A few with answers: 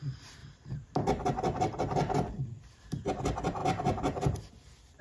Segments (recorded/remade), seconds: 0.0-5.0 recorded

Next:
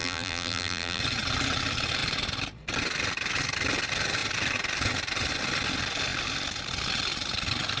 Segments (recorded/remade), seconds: 0.0-1.0 remade; 1.0-7.8 recorded

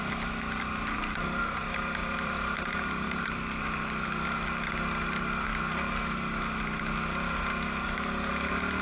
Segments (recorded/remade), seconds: 0.0-2.0 recorded; 2.0-3.4 remade; 3.4-8.8 recorded

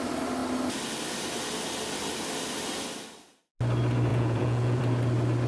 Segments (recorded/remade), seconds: 0.0-4.1 recorded; 4.1-4.8 remade; 4.8-5.5 recorded

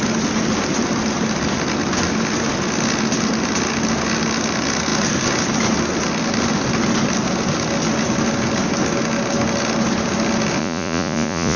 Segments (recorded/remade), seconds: 0.0-10.6 recorded; 10.6-11.6 remade

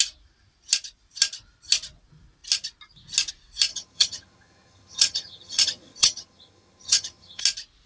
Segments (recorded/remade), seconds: 0.0-3.7 recorded; 3.7-7.4 remade; 7.4-7.9 recorded